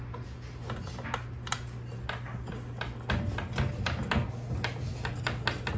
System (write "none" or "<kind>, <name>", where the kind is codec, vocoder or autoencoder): none